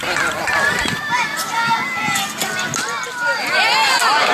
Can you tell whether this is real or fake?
real